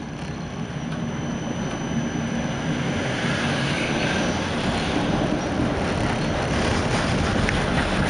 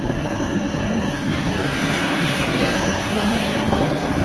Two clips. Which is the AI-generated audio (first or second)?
second